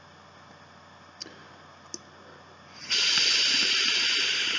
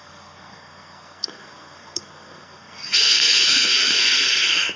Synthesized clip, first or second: second